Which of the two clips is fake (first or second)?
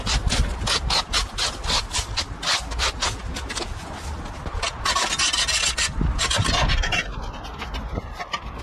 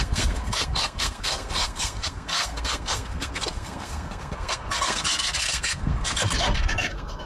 second